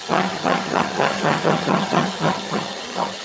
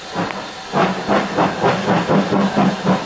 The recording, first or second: second